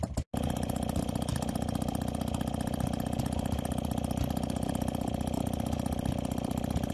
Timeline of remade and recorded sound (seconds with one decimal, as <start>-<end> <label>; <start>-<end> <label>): 0.0-6.9 recorded